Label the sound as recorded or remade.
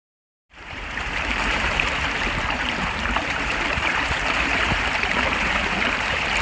remade